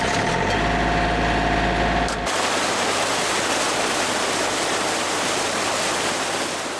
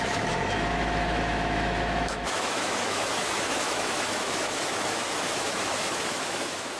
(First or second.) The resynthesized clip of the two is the second